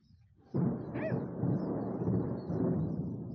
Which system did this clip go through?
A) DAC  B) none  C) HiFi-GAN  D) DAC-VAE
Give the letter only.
B